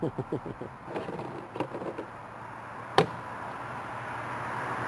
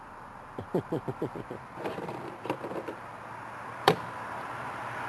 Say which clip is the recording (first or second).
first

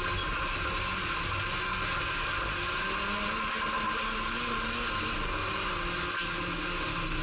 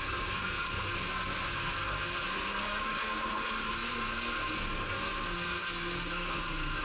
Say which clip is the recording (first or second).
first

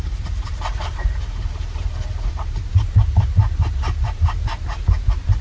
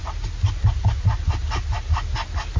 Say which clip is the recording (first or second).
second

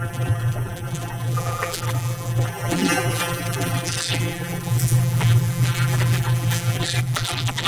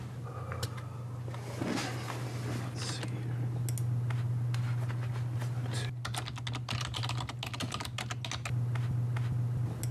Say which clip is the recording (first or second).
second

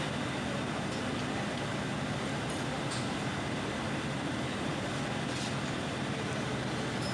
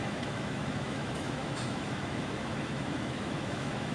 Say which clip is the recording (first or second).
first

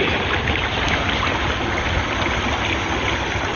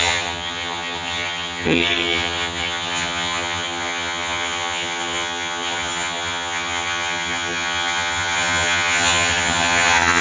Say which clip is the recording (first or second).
first